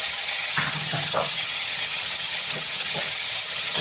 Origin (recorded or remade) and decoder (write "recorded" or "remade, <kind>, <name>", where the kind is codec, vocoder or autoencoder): remade, vocoder, HiFi-GAN